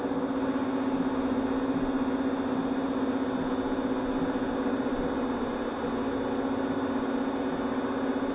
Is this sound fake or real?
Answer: real